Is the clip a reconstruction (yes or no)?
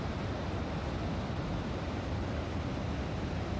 no